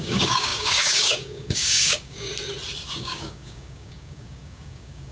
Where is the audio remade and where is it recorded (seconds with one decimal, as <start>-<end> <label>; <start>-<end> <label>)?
0.0-2.3 remade; 2.3-2.9 recorded; 2.9-5.1 remade